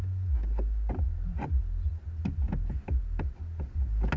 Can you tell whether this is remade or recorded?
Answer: recorded